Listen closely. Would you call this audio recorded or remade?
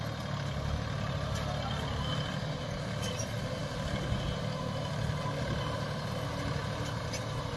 recorded